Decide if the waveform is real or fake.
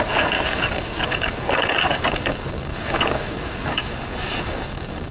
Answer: fake